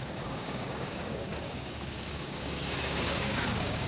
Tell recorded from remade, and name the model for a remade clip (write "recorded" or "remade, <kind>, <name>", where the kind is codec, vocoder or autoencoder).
remade, codec, DAC